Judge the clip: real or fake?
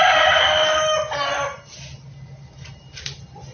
real